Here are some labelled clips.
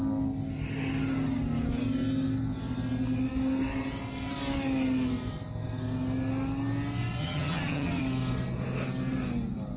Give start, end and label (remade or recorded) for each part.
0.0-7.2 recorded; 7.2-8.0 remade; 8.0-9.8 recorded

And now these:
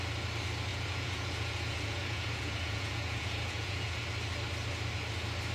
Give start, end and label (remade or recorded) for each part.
0.0-0.7 recorded; 0.7-4.0 remade; 4.0-5.5 recorded

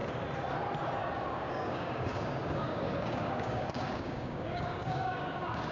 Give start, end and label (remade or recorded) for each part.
0.0-1.3 recorded; 1.3-5.7 remade

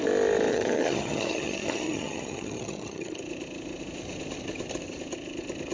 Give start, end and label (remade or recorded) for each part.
0.0-0.5 recorded; 0.5-3.2 remade; 3.2-5.7 recorded

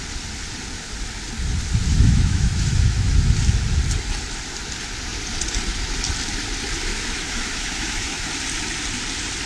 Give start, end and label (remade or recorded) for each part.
0.0-1.9 recorded; 1.9-3.3 remade; 3.3-6.9 recorded; 6.9-8.3 remade; 8.3-9.5 recorded

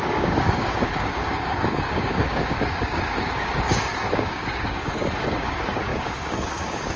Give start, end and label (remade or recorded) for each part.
0.0-7.0 remade

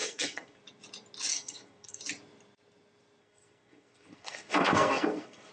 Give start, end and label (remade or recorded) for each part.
0.0-0.6 remade; 0.6-1.3 recorded; 1.3-2.0 remade; 2.0-3.2 recorded; 3.2-5.5 remade

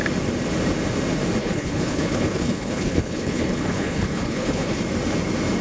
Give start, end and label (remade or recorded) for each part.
0.0-1.4 recorded; 1.4-4.8 remade; 4.8-5.6 recorded